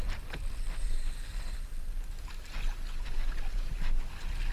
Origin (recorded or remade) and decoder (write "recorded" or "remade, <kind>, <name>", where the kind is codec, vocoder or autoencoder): recorded